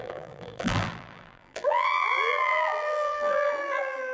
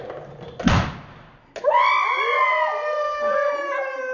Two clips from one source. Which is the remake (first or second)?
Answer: first